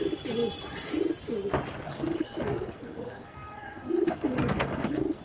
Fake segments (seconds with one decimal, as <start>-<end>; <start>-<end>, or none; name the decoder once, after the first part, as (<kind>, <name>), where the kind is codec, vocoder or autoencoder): 1.9-5.2 (codec, SNAC)